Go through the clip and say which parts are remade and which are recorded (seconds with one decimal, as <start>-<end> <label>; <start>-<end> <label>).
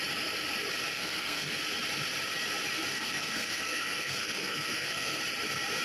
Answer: 0.0-0.9 recorded; 0.9-1.5 remade; 1.5-2.9 recorded; 2.9-5.2 remade; 5.2-5.8 recorded